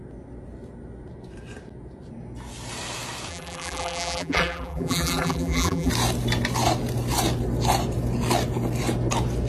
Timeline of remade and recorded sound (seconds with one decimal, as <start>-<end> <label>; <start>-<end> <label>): 0.0-3.3 recorded; 3.3-5.9 remade; 5.9-9.5 recorded